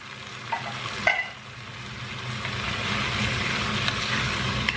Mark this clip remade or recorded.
recorded